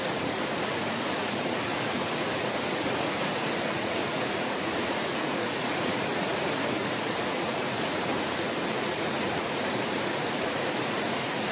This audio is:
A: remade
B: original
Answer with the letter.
A